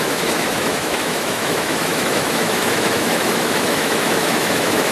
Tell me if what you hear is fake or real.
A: fake